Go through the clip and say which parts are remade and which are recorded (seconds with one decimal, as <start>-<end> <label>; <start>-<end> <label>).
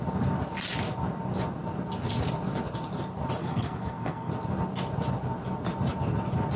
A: 0.0-3.4 recorded; 3.4-4.3 remade; 4.3-6.6 recorded